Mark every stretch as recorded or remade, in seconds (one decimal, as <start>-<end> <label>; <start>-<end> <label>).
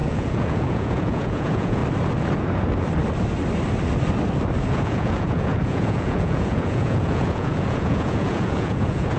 0.0-1.8 remade; 1.8-4.7 recorded; 4.7-9.2 remade